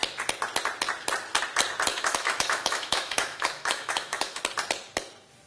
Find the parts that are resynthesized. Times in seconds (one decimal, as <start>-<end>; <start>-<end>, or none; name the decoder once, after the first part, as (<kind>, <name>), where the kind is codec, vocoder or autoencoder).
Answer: 1.9-4.4 (autoencoder, DAC-VAE)